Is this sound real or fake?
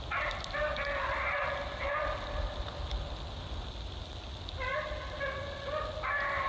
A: real